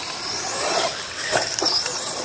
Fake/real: fake